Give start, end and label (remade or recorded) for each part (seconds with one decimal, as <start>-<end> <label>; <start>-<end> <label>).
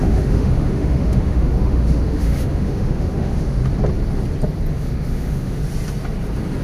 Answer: 0.0-3.6 remade; 3.6-4.7 recorded; 4.7-5.6 remade; 5.6-6.6 recorded